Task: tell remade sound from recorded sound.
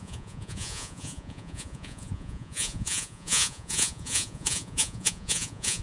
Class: remade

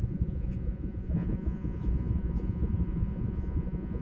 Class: remade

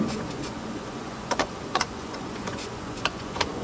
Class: remade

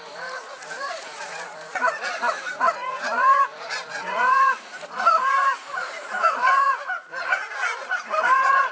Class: remade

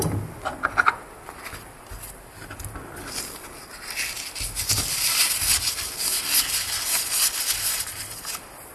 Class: recorded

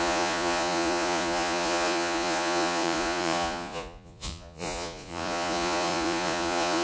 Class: remade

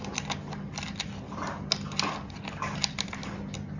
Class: recorded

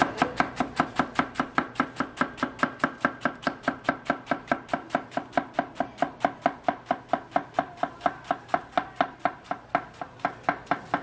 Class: recorded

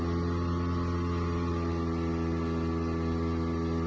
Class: recorded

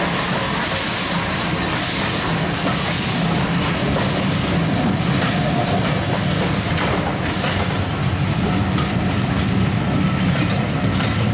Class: recorded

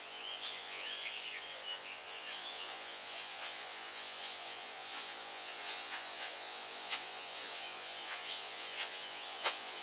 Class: remade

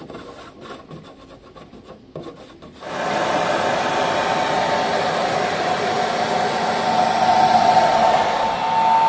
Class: recorded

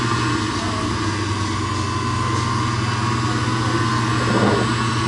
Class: recorded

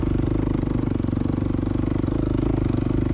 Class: recorded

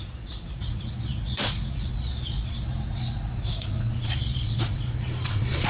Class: remade